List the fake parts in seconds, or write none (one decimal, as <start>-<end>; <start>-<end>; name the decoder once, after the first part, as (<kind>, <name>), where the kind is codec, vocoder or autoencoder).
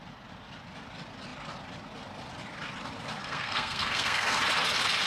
3.2-4.4 (codec, SNAC)